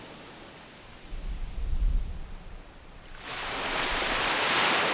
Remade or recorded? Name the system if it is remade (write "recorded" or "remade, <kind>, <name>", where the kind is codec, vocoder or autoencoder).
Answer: recorded